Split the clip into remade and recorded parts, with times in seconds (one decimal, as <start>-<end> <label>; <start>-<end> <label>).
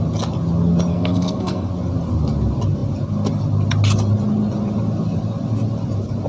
0.0-0.9 recorded; 0.9-1.7 remade; 1.7-6.3 recorded